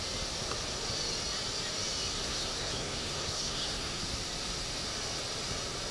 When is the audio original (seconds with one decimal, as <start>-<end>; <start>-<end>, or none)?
0.0-2.2; 4.0-5.9